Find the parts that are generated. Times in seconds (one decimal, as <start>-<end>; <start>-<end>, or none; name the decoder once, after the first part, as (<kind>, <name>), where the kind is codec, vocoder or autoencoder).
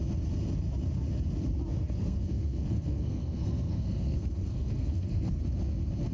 1.7-5.4 (codec, SNAC)